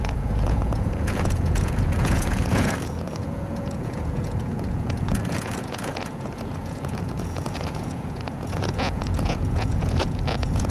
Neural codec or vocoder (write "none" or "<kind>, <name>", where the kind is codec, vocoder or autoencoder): vocoder, Vocos